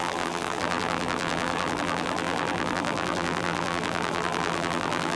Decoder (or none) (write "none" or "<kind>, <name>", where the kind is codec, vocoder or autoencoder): vocoder, BigVGAN v2